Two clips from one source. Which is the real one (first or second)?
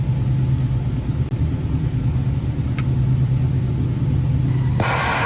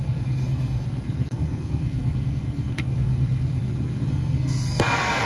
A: first